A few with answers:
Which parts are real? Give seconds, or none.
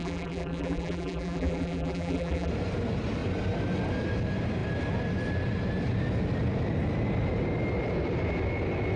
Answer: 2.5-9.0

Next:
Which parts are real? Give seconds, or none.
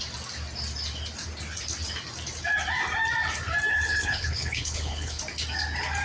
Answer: 0.0-3.7; 5.2-6.0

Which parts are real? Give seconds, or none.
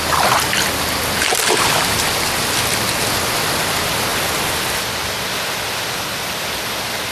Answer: 0.0-1.3; 2.1-7.1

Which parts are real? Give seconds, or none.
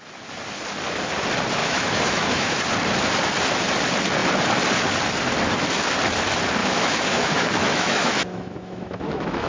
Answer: 0.0-1.6; 2.6-6.6